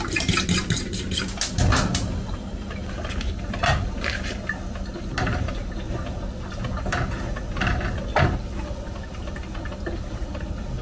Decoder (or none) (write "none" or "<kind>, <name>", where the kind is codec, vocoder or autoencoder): none